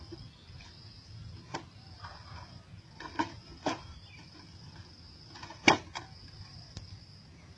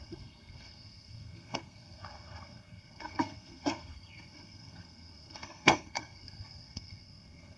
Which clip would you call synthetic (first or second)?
second